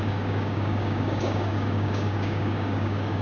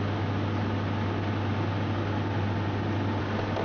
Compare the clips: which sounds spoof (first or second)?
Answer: first